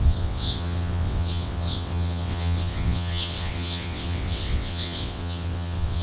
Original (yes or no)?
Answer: no